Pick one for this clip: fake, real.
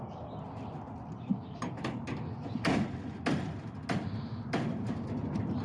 real